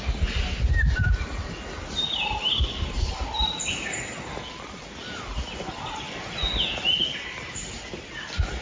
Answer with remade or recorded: recorded